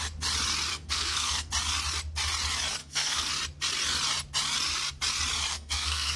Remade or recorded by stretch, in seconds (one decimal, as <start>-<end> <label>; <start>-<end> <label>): 0.0-0.7 recorded; 0.7-1.5 remade; 1.5-2.8 recorded; 2.8-3.3 remade; 3.3-5.5 recorded; 5.5-6.2 remade